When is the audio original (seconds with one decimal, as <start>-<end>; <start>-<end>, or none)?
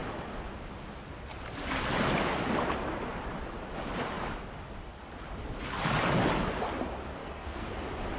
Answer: 0.0-7.2; 7.7-8.2